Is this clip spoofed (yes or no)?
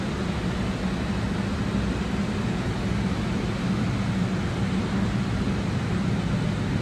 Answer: no